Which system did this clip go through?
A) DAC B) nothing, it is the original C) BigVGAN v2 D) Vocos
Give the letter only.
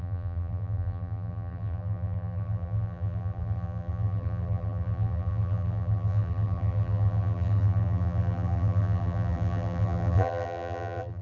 C